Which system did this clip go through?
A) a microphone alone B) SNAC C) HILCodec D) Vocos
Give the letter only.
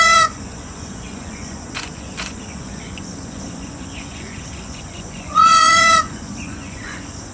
D